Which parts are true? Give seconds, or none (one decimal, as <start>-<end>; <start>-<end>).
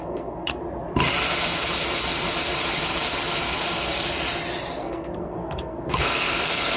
0.6-4.7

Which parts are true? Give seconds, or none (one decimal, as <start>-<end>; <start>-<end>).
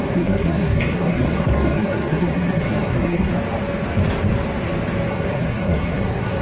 3.3-5.1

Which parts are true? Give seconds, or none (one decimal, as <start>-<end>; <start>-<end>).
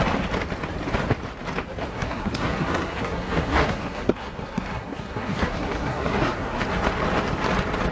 0.0-1.9; 6.6-7.9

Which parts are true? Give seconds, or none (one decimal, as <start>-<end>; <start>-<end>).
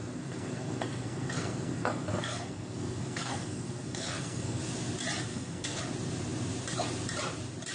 4.6-5.3; 5.8-7.7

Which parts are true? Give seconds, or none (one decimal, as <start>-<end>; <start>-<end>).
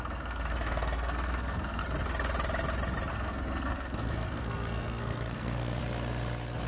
1.8-3.1; 5.8-6.7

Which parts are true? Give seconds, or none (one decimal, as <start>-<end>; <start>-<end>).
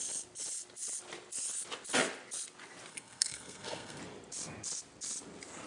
0.0-2.9; 4.0-5.7